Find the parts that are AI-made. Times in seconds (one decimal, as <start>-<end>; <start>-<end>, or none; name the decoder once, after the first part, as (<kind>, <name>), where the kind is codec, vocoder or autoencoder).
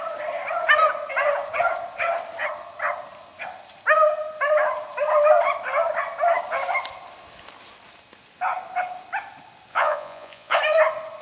9.7-10.6 (vocoder, Vocos)